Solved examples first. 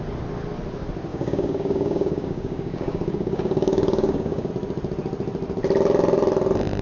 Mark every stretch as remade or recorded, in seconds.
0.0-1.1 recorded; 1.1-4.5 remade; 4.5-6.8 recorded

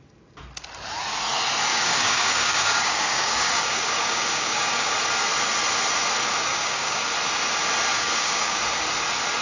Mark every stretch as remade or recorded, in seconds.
0.0-1.7 recorded; 1.7-4.9 remade; 4.9-6.5 recorded; 6.5-7.1 remade; 7.1-7.9 recorded; 7.9-8.6 remade; 8.6-9.4 recorded

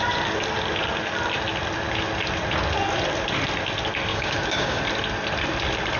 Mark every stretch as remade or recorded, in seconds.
0.0-4.1 recorded; 4.1-4.8 remade; 4.8-6.0 recorded

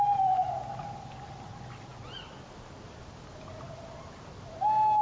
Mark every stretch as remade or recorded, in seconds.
0.0-5.0 recorded

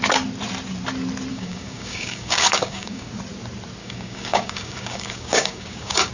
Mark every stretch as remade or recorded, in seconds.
0.0-1.3 recorded; 1.3-3.1 remade; 3.1-3.8 recorded; 3.8-6.1 remade

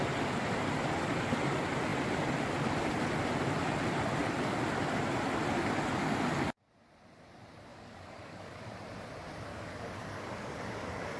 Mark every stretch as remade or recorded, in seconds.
0.0-7.7 recorded; 7.7-8.7 remade; 8.7-9.5 recorded; 9.5-11.2 remade